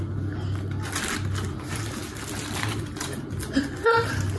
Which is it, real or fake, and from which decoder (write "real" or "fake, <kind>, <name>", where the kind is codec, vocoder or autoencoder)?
real